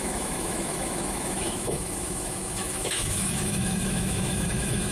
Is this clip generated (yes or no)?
yes